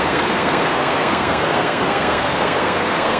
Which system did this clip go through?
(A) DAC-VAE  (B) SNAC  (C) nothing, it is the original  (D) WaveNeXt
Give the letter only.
B